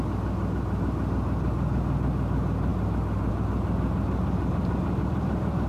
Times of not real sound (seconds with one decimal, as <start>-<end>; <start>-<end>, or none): none